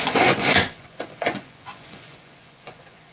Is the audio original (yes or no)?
no